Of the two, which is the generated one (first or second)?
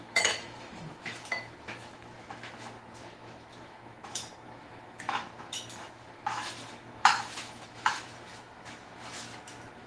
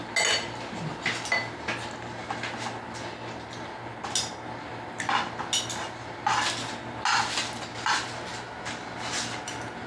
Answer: first